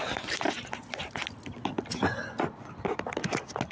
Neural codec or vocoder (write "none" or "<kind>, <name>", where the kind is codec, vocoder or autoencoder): none